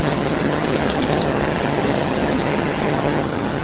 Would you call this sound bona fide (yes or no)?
no